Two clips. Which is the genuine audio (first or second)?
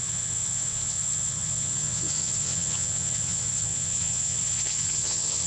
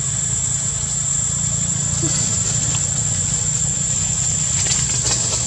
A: second